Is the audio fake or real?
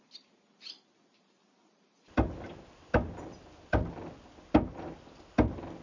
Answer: real